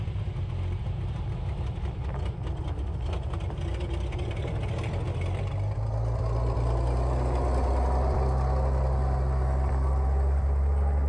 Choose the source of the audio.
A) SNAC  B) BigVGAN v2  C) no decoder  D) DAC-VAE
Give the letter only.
C